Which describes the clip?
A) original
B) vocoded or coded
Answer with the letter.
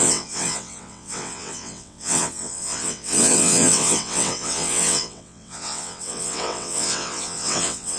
B